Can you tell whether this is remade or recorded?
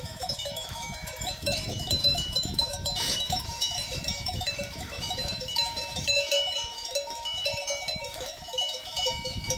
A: remade